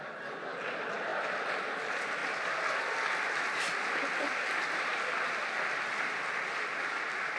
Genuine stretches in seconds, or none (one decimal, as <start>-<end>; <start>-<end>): 2.2-6.3